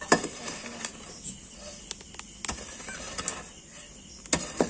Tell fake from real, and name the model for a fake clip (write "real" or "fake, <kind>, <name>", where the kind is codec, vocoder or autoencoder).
real